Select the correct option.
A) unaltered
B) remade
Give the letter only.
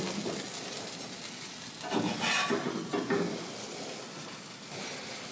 A